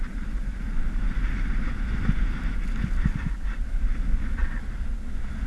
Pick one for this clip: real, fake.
real